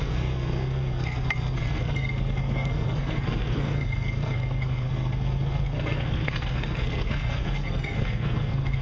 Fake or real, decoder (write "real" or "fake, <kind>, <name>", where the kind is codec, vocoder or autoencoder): fake, codec, SNAC